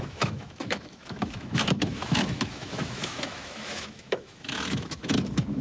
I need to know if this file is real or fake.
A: fake